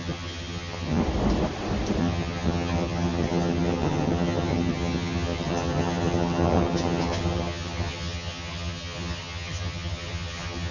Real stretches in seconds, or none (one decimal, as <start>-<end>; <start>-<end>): 1.0-2.0